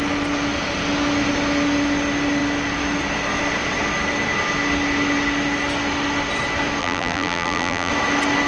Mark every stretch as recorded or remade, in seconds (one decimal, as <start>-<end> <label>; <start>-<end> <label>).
0.0-6.8 recorded; 6.8-7.9 remade; 7.9-8.5 recorded